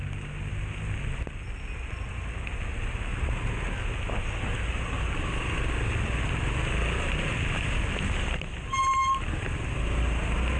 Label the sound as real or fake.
real